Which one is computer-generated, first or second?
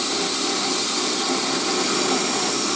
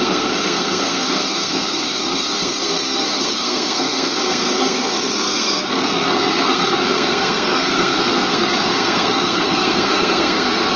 second